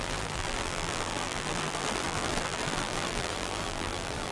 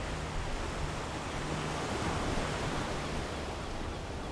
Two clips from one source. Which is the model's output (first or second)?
first